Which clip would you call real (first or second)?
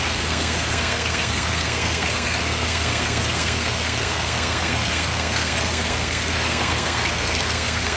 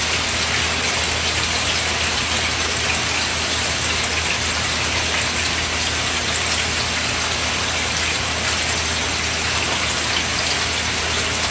second